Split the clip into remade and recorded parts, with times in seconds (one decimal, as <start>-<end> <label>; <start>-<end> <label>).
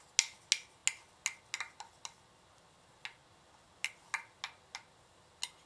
0.0-5.7 recorded